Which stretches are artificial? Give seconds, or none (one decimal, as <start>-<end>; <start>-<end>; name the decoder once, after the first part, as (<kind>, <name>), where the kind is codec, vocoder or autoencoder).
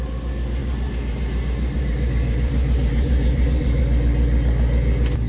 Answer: 0.6-3.8 (vocoder, BigVGAN v2)